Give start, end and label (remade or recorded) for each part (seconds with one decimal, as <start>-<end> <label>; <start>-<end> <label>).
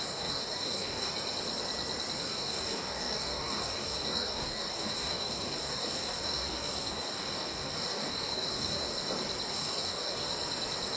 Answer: 0.0-1.1 remade; 1.1-2.2 recorded; 2.2-8.9 remade; 8.9-9.5 recorded; 9.5-10.3 remade; 10.3-11.0 recorded